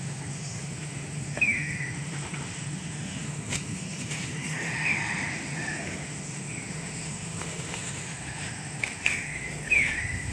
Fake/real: fake